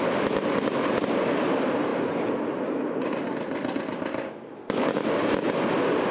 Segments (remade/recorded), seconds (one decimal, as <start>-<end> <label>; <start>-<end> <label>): 0.0-6.1 recorded